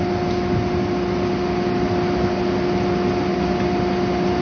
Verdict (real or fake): real